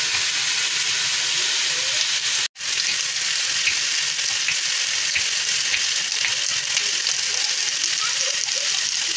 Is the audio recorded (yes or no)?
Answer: yes